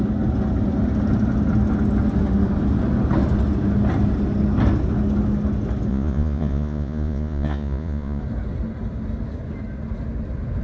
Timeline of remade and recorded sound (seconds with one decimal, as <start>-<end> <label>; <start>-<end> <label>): 0.0-5.9 recorded; 5.9-8.2 remade; 8.2-10.6 recorded